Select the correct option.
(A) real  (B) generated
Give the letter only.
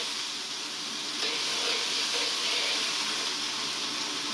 A